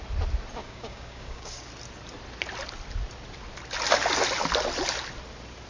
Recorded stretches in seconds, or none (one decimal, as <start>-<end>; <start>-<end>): 0.0-0.6; 1.7-5.7